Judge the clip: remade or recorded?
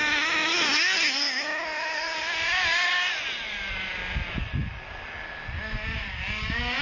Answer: recorded